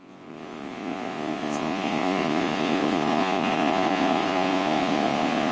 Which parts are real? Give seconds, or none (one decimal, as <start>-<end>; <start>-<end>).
none